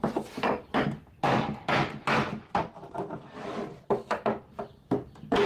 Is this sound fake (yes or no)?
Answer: no